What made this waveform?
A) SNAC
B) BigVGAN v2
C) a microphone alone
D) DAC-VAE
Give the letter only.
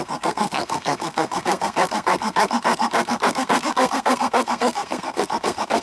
A